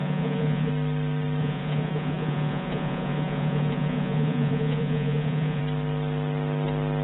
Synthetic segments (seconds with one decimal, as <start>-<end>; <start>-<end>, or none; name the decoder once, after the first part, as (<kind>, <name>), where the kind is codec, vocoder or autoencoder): 0.0-0.7 (vocoder, Vocos); 1.4-5.6